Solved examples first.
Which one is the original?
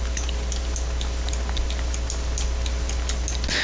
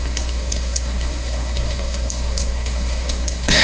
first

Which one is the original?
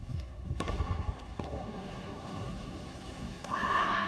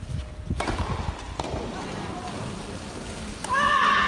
second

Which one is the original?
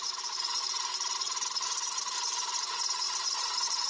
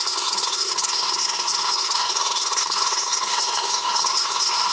first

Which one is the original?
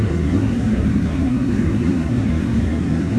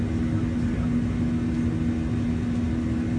second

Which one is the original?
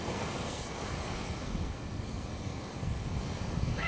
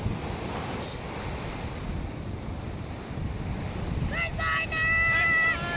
second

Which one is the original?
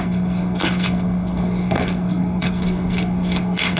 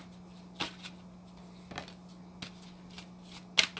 second